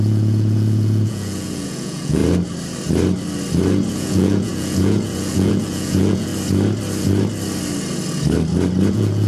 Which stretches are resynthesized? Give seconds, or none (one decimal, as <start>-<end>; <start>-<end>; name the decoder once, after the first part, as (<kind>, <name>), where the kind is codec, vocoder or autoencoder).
0.0-2.2 (vocoder, Vocos); 3.9-6.3; 8.9-9.3